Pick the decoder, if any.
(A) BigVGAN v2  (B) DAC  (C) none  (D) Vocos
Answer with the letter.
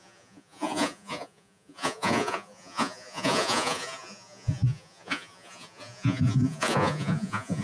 D